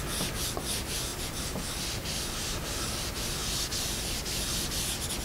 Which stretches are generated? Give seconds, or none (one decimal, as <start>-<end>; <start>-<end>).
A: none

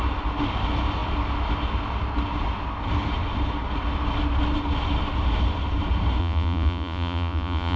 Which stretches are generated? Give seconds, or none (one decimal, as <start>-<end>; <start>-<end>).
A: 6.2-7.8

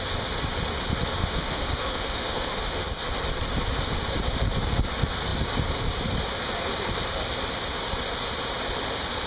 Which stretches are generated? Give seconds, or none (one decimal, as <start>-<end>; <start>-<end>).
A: 1.2-2.8

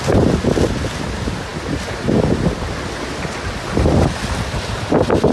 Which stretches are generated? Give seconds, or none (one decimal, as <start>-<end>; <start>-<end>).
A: none

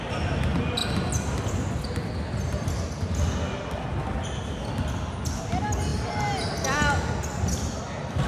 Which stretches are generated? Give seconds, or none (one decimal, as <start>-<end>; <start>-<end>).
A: none

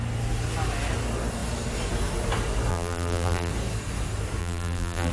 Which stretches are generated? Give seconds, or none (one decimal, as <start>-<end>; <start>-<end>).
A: 2.7-3.5; 4.4-5.1

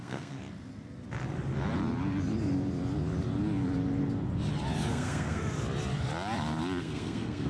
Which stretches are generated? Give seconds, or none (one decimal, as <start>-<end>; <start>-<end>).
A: 0.0-0.4; 4.9-5.4; 6.8-7.5